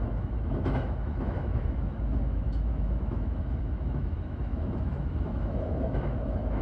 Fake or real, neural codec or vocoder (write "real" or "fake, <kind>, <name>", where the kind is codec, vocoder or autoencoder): fake, autoencoder, DAC-VAE